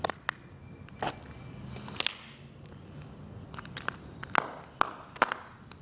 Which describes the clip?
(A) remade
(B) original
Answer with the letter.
B